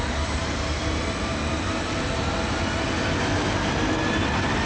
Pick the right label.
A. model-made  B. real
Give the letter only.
B